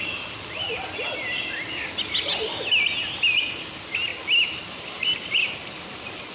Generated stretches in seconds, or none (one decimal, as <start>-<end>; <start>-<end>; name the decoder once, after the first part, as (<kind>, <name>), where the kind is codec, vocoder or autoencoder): none